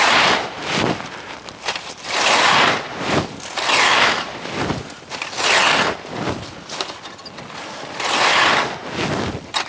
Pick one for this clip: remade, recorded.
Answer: recorded